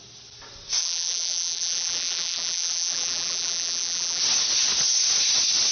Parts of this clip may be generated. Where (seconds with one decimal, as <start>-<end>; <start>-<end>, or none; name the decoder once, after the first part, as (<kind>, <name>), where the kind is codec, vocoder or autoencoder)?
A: 0.8-4.2 (vocoder, BigVGAN v2)